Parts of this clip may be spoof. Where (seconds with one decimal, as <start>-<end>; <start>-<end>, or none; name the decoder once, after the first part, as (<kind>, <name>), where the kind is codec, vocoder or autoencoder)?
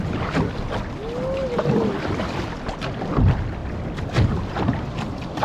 1.4-2.8 (vocoder, BigVGAN v2); 3.6-4.3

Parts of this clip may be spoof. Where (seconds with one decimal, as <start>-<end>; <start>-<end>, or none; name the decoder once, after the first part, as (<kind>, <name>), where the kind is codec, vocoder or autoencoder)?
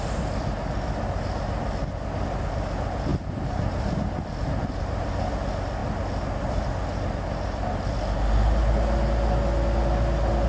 none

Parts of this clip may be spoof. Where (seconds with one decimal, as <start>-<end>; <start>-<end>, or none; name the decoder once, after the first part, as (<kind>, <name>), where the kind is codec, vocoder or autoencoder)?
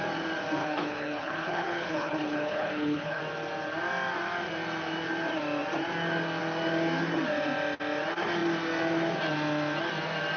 0.6-3.2 (codec, HILCodec)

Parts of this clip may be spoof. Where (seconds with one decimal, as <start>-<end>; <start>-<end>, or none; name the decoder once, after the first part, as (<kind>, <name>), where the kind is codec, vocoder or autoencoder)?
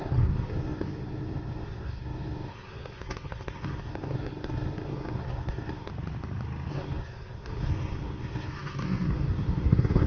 0.0-5.9 (codec, SNAC); 6.7-10.1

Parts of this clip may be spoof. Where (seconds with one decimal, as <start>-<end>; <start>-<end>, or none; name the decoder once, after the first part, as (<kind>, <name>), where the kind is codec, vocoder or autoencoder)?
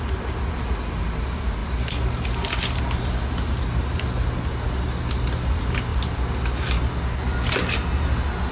none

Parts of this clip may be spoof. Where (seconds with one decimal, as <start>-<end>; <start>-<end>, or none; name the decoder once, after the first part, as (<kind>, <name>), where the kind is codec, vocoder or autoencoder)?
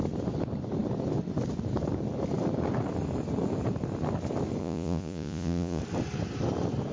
4.6-5.8 (vocoder, Vocos)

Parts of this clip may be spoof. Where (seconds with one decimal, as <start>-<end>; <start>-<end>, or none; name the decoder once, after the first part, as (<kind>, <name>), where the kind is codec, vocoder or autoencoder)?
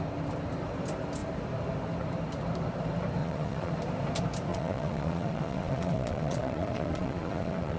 3.2-3.7 (vocoder, Vocos); 4.5-7.8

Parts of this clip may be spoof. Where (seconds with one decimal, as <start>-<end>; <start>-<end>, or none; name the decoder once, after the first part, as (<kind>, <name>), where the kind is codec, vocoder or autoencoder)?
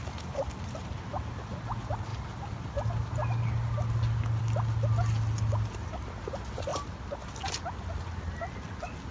none